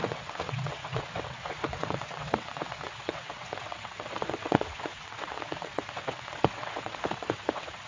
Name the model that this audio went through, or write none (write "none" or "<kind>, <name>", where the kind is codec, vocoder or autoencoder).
vocoder, WaveNeXt